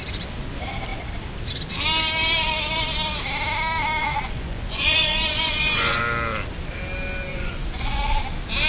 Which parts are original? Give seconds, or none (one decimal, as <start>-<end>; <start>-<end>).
0.0-4.0; 6.0-7.3; 8.2-8.7